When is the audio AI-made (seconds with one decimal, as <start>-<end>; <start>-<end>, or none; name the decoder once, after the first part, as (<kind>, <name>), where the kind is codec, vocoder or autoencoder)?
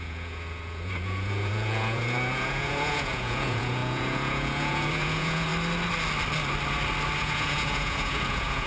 0.0-5.5 (vocoder, Vocos); 7.2-8.7